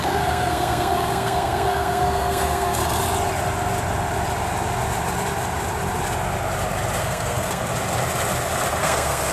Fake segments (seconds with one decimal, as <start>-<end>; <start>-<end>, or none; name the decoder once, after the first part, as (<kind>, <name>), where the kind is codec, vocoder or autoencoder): 0.0-2.8 (codec, SNAC); 7.0-7.6; 8.8-9.3